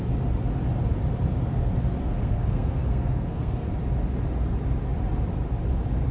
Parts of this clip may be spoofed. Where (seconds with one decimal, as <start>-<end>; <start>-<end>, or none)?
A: 2.0-3.7